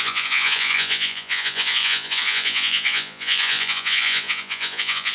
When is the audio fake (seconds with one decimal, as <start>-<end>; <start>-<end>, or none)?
0.0-5.1